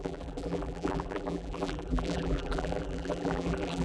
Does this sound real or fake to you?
fake